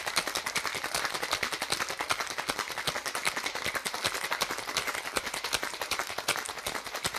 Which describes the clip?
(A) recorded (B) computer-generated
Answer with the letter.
A